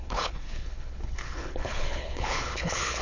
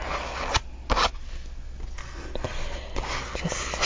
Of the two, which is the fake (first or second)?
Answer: first